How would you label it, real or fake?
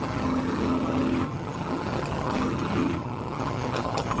fake